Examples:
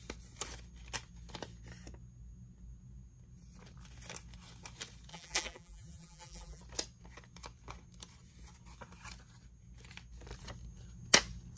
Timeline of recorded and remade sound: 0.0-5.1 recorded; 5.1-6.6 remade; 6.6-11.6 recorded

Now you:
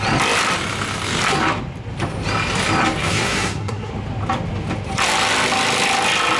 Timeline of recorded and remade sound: 0.0-3.0 recorded; 3.0-3.9 remade; 3.9-6.4 recorded

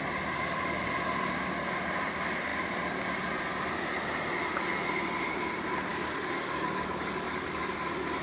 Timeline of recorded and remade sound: 0.0-5.9 recorded; 5.9-7.7 remade; 7.7-8.2 recorded

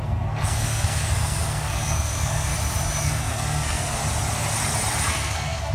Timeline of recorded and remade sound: 0.0-2.5 remade; 2.5-3.0 recorded; 3.0-4.0 remade; 4.0-5.1 recorded; 5.1-5.7 remade